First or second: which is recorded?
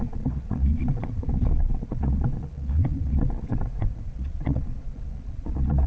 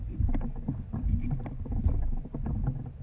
second